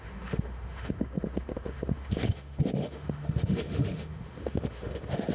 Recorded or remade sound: remade